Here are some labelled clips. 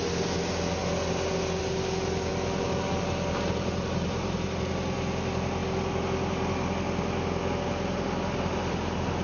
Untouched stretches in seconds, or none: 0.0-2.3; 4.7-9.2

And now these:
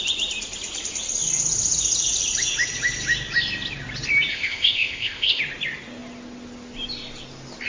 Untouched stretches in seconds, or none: 0.0-4.3; 5.4-7.7

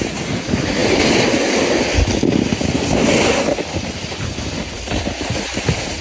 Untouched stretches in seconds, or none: 0.0-6.0

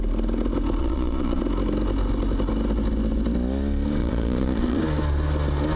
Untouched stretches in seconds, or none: 0.0-0.8; 1.4-4.0; 4.8-5.8

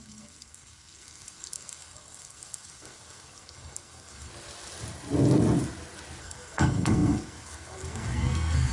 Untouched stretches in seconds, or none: 4.3-6.2

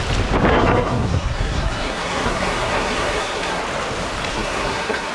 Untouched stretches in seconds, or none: 0.0-0.5; 3.6-4.3